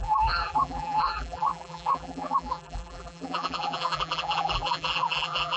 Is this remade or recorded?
remade